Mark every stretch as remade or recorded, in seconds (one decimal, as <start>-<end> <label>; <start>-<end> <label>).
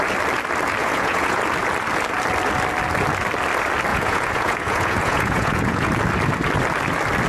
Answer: 0.0-0.8 recorded; 0.8-1.4 remade; 1.4-3.9 recorded; 3.9-5.9 remade; 5.9-7.3 recorded